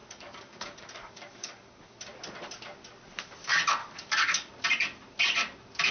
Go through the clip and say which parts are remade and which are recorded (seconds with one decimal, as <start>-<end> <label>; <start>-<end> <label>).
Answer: 0.0-2.0 remade; 2.0-3.8 recorded; 3.8-4.5 remade; 4.5-5.9 recorded